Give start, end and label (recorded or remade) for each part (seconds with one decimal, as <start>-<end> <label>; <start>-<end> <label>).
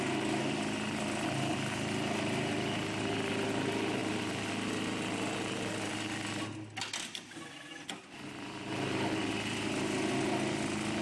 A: 0.0-11.0 recorded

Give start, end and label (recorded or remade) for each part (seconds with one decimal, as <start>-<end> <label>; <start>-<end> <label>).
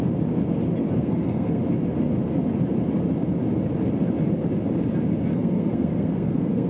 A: 0.0-1.0 recorded; 1.0-1.6 remade; 1.6-5.3 recorded; 5.3-6.7 remade